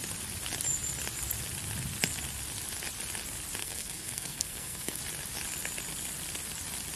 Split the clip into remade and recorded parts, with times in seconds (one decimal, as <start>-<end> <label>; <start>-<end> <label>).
0.0-3.6 recorded; 3.6-5.0 remade; 5.0-7.0 recorded